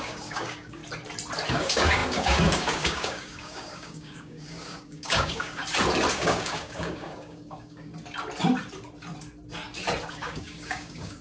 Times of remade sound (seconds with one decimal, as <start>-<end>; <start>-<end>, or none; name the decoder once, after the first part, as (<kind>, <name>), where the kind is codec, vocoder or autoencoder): 0.0-0.8 (codec, DAC); 1.5-5.6; 6.1-7.9; 10.1-11.2